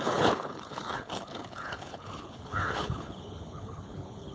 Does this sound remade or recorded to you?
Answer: remade